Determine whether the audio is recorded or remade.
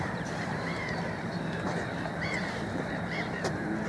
remade